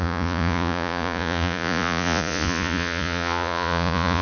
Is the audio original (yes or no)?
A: no